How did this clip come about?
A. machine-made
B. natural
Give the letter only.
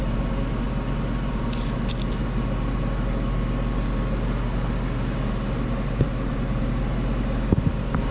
B